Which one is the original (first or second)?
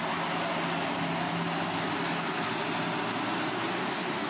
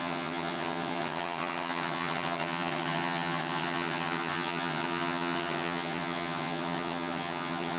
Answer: first